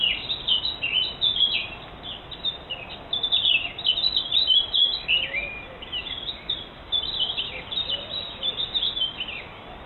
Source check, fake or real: real